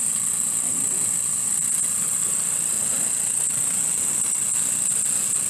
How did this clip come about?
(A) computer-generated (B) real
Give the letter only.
B